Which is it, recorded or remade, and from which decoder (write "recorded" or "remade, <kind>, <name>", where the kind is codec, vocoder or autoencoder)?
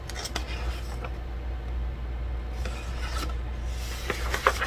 recorded